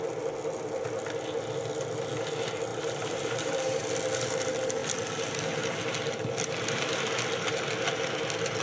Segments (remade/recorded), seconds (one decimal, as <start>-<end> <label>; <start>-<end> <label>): 0.0-2.7 recorded; 2.7-3.8 remade; 3.8-8.6 recorded